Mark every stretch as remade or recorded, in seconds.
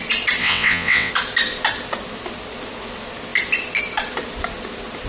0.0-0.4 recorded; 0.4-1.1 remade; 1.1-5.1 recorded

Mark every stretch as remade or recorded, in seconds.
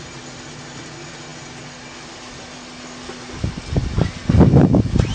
0.0-5.1 recorded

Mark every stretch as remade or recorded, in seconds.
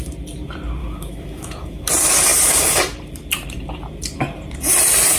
0.0-0.8 recorded; 0.8-1.9 remade; 1.9-5.2 recorded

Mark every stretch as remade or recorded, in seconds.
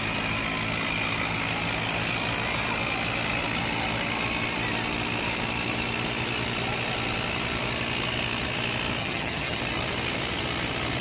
0.0-9.0 recorded; 9.0-9.6 remade; 9.6-11.0 recorded